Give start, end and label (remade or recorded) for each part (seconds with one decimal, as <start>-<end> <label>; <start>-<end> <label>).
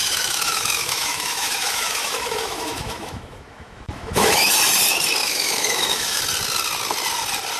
0.0-4.5 remade; 4.5-5.2 recorded; 5.2-6.2 remade; 6.2-7.6 recorded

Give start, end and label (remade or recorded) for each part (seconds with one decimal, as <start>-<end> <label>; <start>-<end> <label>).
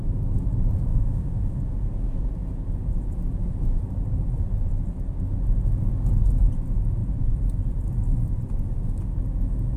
0.0-0.9 recorded; 0.9-1.6 remade; 1.6-9.8 recorded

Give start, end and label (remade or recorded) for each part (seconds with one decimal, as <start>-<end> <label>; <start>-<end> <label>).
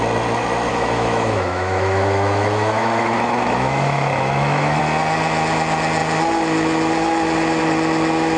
0.0-0.7 recorded; 0.7-4.8 remade; 4.8-8.4 recorded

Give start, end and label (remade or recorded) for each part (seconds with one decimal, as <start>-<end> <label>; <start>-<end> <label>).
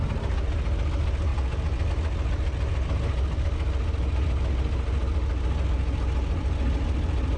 0.0-7.4 recorded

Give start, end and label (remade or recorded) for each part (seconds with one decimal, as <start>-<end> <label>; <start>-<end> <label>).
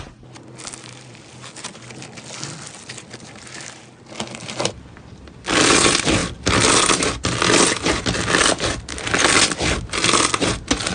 0.0-10.9 recorded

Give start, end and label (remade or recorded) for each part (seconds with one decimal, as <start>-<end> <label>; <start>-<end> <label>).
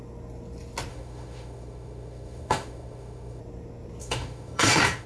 0.0-0.9 recorded; 0.9-3.4 remade; 3.4-4.0 recorded; 4.0-5.1 remade